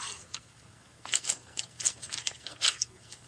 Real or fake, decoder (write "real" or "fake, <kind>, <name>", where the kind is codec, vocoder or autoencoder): fake, codec, SNAC